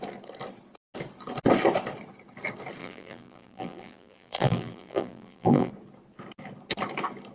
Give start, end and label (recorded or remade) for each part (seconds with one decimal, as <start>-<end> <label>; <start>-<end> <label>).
0.0-2.8 recorded; 2.8-5.7 remade; 5.7-7.3 recorded